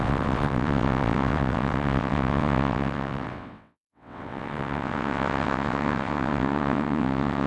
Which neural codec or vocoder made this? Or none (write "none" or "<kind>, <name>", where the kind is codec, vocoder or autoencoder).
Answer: vocoder, WaveNeXt